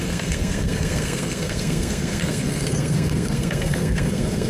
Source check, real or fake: fake